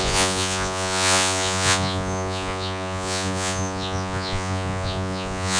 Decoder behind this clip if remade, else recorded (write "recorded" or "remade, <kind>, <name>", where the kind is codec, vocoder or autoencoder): remade, vocoder, Vocos